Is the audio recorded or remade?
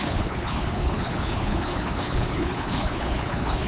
remade